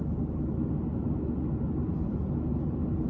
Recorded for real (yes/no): yes